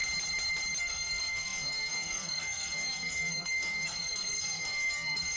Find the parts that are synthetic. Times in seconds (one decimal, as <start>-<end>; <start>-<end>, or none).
0.8-5.4